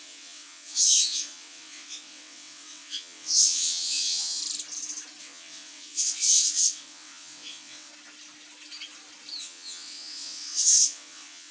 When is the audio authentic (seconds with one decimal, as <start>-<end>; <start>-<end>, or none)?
4.4-5.2; 7.9-9.4